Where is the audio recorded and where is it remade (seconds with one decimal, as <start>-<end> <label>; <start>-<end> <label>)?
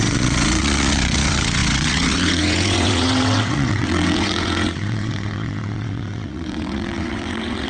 0.0-7.7 remade